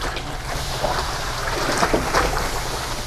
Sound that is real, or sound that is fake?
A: fake